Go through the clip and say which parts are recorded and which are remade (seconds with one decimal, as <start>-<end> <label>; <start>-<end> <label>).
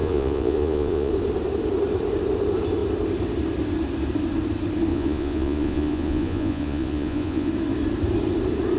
0.0-1.1 remade; 1.1-4.9 recorded; 4.9-7.5 remade; 7.5-8.8 recorded